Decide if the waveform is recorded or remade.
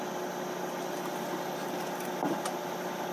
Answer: recorded